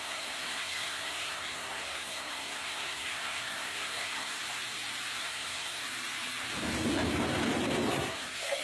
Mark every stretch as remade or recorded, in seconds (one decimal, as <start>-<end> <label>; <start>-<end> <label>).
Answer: 0.0-4.4 remade; 4.4-5.2 recorded; 5.2-5.8 remade; 5.8-7.9 recorded; 7.9-8.6 remade